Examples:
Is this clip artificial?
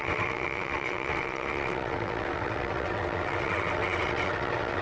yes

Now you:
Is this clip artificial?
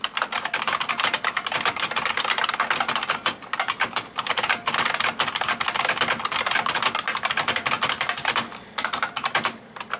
no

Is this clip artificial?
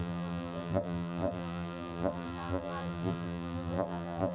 yes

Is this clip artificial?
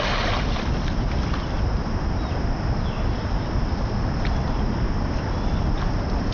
no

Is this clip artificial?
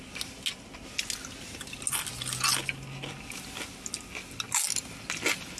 no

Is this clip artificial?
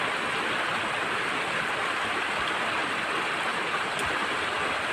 no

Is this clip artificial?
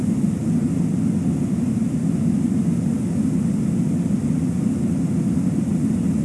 no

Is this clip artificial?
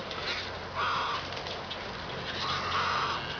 no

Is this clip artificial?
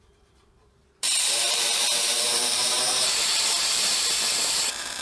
yes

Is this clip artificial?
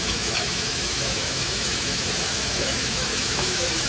yes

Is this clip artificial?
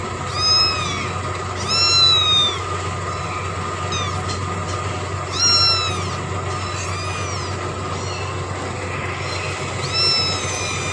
no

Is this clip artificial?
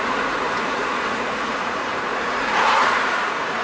yes